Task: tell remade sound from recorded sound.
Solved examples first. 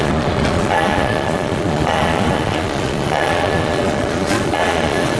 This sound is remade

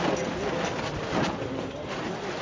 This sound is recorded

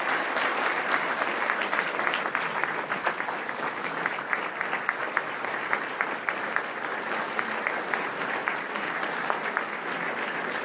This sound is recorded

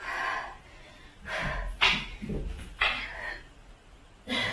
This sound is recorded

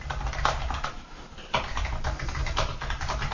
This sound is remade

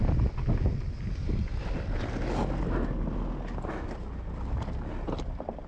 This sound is recorded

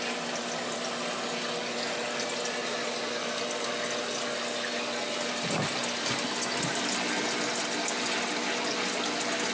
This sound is recorded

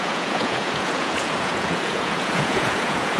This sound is remade